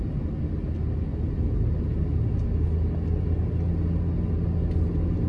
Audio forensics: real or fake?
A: real